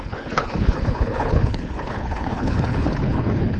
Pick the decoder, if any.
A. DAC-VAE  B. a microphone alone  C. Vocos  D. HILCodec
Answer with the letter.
D